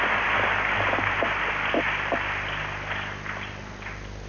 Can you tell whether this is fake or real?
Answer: real